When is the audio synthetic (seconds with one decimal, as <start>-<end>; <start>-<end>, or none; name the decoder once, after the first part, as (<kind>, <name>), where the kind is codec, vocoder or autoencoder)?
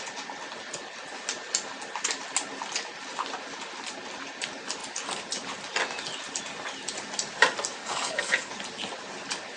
7.8-8.5 (codec, HILCodec)